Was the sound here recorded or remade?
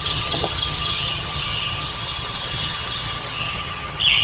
remade